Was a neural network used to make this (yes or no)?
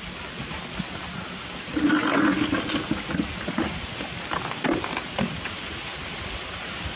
no